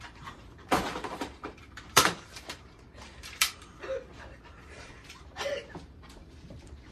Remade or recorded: remade